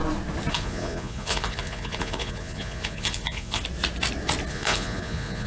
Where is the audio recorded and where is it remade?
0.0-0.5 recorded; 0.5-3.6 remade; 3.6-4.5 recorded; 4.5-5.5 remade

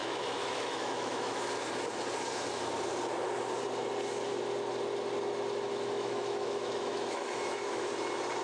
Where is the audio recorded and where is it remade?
0.0-1.4 remade; 1.4-5.7 recorded; 5.7-7.9 remade; 7.9-8.4 recorded

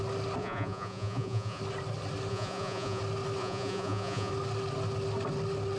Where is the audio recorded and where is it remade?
0.0-0.4 recorded; 0.4-1.6 remade; 1.6-2.3 recorded; 2.3-3.0 remade; 3.0-3.4 recorded; 3.4-4.3 remade; 4.3-5.8 recorded

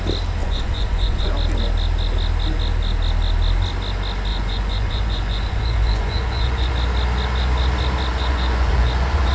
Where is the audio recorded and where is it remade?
0.0-0.4 recorded; 0.4-1.3 remade; 1.3-4.3 recorded; 4.3-6.7 remade; 6.7-8.1 recorded; 8.1-9.3 remade

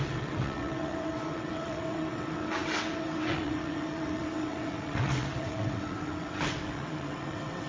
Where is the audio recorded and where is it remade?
0.0-7.7 remade

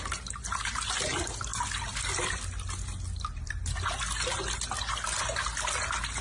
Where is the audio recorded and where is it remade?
0.0-6.2 recorded

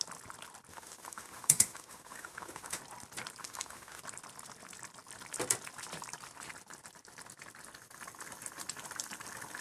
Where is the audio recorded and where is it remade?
0.0-0.7 recorded; 0.7-2.8 remade; 2.8-3.4 recorded; 3.4-4.0 remade; 4.0-9.6 recorded